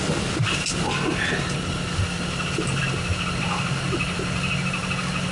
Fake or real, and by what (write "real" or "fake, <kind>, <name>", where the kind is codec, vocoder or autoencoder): real